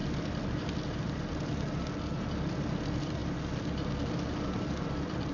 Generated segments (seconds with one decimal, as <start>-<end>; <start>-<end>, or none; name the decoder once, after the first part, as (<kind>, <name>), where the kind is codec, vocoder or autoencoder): none